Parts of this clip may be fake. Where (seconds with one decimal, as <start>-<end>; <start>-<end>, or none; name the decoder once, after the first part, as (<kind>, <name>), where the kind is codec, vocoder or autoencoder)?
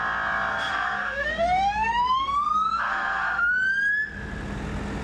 0.5-3.5 (codec, SNAC)